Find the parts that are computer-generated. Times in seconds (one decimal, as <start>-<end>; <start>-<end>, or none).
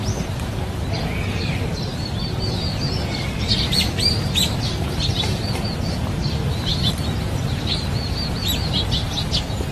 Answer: 0.0-9.7